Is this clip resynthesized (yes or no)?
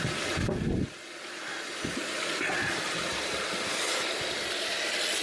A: no